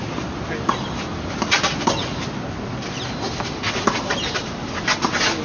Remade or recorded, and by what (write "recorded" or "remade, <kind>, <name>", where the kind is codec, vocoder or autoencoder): recorded